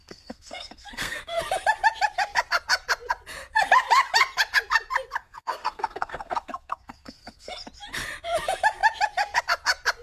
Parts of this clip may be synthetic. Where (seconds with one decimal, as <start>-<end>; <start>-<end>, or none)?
0.0-1.4; 5.2-7.5